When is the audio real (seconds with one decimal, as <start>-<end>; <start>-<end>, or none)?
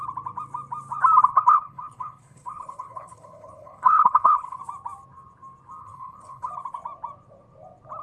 0.0-1.3; 4.6-5.8; 6.5-8.0